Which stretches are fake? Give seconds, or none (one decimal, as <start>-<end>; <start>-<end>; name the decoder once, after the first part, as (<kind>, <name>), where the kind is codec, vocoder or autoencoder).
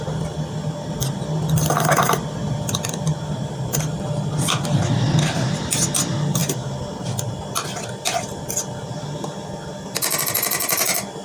0.0-11.2 (vocoder, BigVGAN v2)